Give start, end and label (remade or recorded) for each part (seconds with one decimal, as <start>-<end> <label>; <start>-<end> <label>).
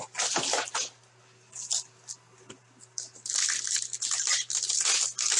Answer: 0.0-5.4 recorded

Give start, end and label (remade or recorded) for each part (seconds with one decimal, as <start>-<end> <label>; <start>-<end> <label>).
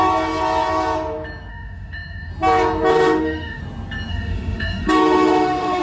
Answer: 0.0-1.5 recorded; 1.5-2.3 remade; 2.3-2.9 recorded; 2.9-3.6 remade; 3.6-4.1 recorded; 4.1-5.8 remade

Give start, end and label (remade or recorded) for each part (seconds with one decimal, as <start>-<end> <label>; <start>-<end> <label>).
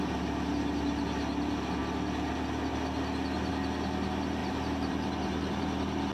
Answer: 0.0-4.4 recorded; 4.4-6.1 remade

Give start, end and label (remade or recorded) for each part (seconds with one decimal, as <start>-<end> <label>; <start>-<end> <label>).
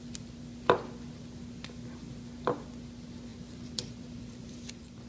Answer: 0.0-3.3 recorded; 3.3-5.1 remade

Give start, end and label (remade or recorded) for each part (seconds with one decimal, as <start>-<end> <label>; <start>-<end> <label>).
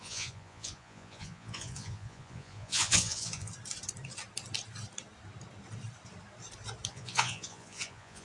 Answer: 0.0-3.5 remade; 3.5-6.9 recorded; 6.9-8.2 remade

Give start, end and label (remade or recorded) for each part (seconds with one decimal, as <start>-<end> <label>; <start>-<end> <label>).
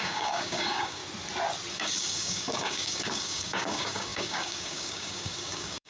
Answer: 0.0-1.0 remade; 1.0-1.7 recorded; 1.7-5.9 remade